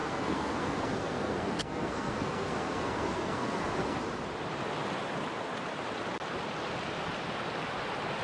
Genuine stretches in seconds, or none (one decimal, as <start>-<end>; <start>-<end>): 4.0-8.2